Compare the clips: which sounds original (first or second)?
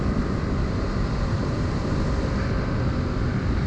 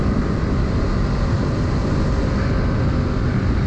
second